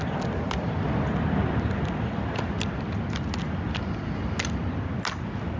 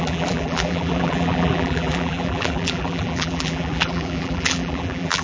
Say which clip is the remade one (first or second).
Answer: second